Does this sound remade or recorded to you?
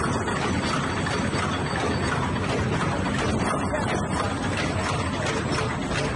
recorded